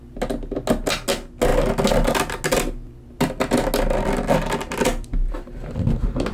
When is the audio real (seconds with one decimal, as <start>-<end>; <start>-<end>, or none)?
0.0-6.3